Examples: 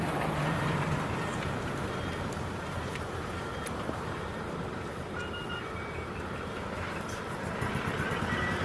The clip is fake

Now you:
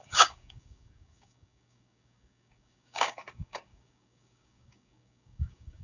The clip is fake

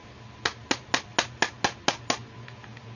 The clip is real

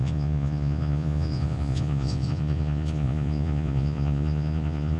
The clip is fake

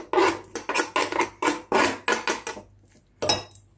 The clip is real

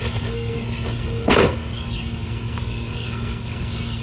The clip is fake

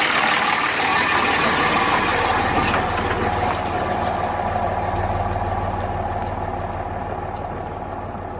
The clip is real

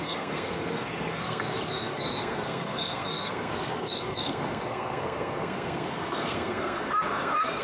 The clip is fake